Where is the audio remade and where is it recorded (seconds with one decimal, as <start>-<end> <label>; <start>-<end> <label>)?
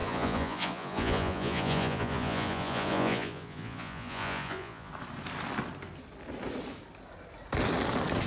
0.0-4.9 remade; 4.9-8.3 recorded